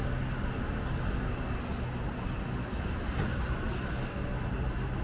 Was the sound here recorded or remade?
recorded